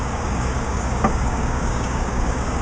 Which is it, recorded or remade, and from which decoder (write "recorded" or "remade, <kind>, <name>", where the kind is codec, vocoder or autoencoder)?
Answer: remade, codec, DAC